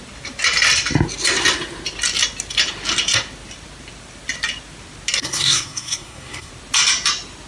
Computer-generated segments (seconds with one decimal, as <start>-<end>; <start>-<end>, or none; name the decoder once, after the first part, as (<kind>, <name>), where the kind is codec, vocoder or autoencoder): 5.2-6.5 (codec, SNAC)